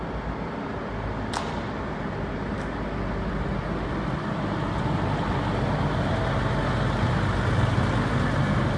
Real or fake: real